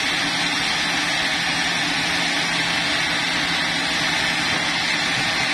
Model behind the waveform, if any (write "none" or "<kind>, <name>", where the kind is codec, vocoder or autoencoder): none